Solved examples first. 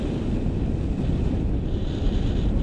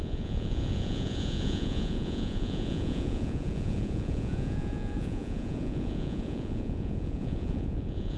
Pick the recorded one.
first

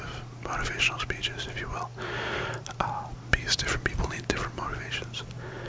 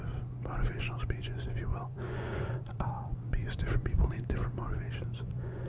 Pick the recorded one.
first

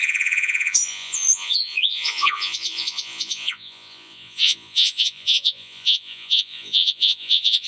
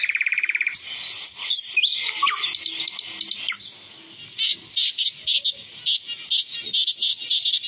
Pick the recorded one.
second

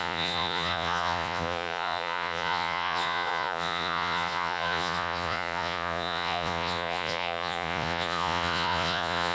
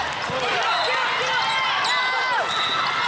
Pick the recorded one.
second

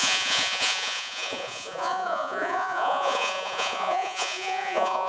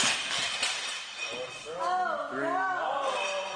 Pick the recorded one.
second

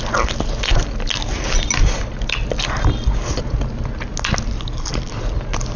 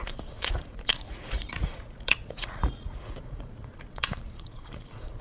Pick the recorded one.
first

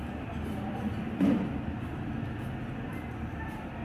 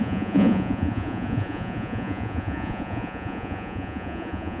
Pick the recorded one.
first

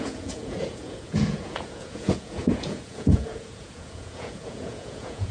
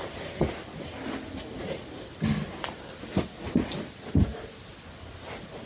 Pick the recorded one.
second